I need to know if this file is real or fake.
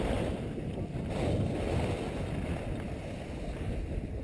real